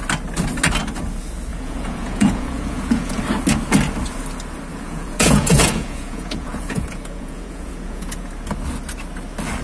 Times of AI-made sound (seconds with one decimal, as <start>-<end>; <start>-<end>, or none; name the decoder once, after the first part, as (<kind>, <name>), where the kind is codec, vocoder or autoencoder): 1.5-3.2 (vocoder, Vocos); 4.7-8.3